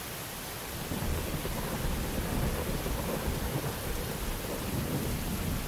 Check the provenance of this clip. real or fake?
real